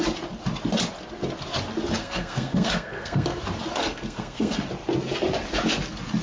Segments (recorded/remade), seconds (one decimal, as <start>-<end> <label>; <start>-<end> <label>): 0.0-2.0 recorded; 2.0-3.4 remade; 3.4-3.8 recorded; 3.8-4.6 remade; 4.6-6.2 recorded

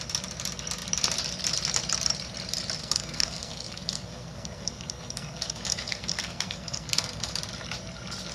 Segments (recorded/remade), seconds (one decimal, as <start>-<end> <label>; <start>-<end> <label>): 0.0-2.8 recorded; 2.8-7.3 remade; 7.3-8.3 recorded

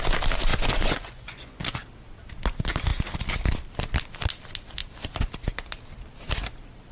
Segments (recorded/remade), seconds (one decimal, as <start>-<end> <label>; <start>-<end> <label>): 0.0-0.5 recorded; 0.5-1.6 remade; 1.6-6.9 recorded

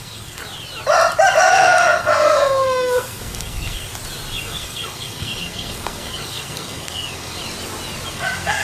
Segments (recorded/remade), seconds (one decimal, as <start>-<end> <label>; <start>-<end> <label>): 0.0-0.4 remade; 0.4-1.4 recorded; 1.4-3.9 remade; 3.9-4.4 recorded; 4.4-7.4 remade; 7.4-8.1 recorded; 8.1-8.6 remade

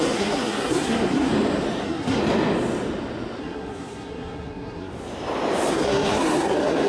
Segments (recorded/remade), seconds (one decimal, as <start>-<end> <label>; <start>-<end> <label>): 0.0-1.3 remade; 1.3-1.8 recorded; 1.8-2.2 remade; 2.2-3.4 recorded; 3.4-4.9 remade; 4.9-5.7 recorded; 5.7-6.9 remade

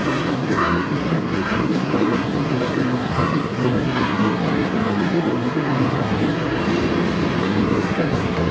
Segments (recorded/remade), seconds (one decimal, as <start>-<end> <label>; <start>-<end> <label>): 0.0-6.6 remade; 6.6-7.4 recorded; 7.4-8.5 remade

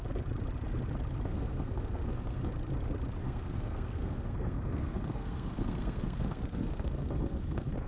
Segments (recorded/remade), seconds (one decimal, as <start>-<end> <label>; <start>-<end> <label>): 0.0-1.3 recorded; 1.3-2.5 remade; 2.5-3.2 recorded; 3.2-7.9 remade

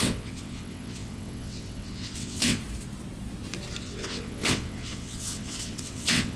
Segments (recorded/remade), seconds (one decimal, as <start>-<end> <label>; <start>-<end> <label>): 0.0-2.6 remade; 2.6-3.8 recorded; 3.8-6.4 remade